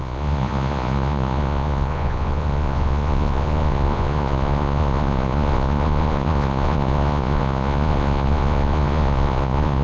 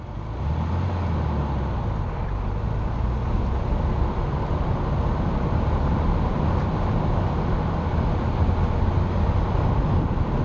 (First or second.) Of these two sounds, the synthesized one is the first